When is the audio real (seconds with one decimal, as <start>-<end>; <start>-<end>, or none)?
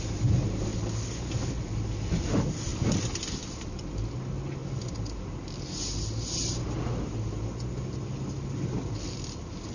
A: 0.0-9.7